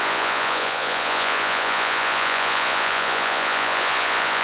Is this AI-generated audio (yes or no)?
yes